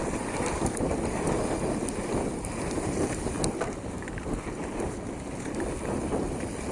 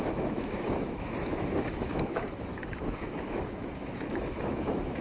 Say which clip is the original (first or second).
first